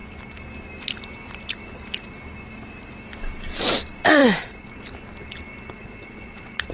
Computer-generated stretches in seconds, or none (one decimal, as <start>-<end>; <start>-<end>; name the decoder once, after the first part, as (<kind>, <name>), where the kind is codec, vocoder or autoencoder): 4.2-4.7 (vocoder, Vocos); 5.8-6.7